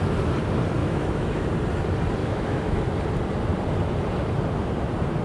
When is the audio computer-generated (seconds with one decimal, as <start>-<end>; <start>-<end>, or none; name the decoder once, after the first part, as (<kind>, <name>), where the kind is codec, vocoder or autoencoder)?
0.8-1.5 (autoencoder, DAC-VAE); 2.2-2.8